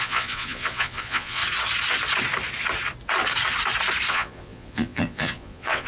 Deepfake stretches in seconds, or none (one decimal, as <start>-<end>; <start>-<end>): 0.0-1.4; 4.1-5.9